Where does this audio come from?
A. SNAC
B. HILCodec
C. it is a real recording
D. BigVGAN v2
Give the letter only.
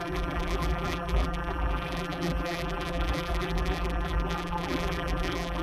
D